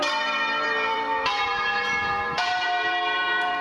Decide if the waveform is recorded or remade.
remade